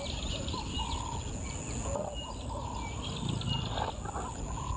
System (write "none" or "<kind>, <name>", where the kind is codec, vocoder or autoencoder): none